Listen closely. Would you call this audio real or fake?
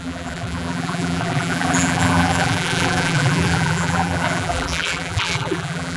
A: fake